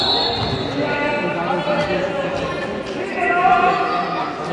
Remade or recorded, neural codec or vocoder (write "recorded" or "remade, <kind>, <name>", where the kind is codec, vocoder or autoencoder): recorded